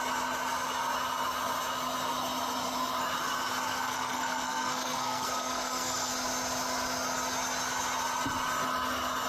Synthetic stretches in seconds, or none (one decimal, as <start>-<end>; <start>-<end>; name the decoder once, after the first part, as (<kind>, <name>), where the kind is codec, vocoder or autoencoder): 3.7-6.1 (codec, SNAC)